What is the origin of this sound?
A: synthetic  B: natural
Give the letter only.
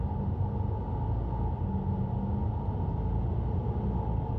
B